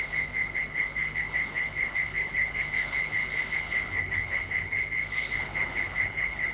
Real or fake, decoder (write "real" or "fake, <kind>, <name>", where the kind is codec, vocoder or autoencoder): fake, codec, HILCodec